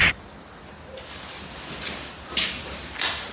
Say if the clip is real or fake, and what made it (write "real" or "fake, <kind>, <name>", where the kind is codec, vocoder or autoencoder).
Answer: real